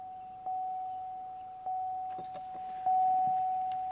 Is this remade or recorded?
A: recorded